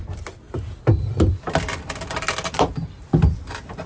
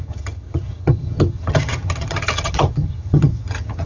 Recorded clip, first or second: first